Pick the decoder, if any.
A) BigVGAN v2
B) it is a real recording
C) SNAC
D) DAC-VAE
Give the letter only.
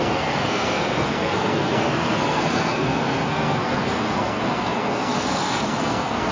C